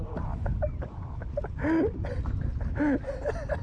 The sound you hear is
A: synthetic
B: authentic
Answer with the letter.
B